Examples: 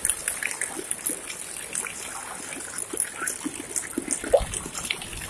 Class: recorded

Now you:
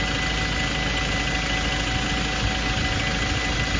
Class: recorded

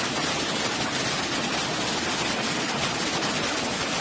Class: recorded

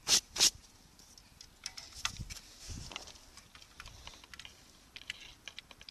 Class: recorded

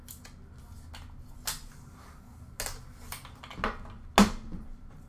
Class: recorded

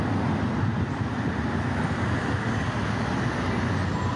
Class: recorded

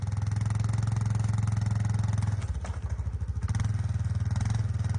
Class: recorded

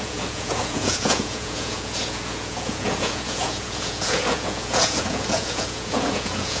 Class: remade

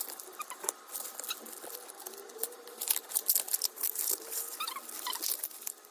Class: recorded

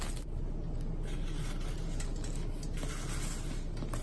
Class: recorded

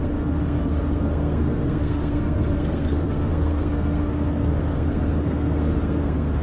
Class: remade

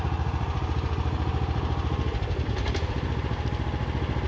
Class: recorded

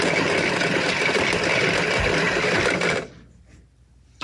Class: recorded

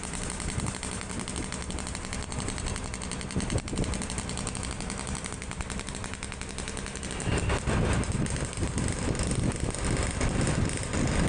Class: recorded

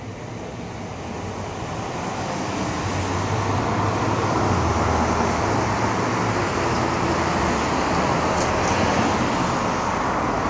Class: recorded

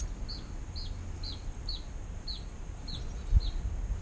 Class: recorded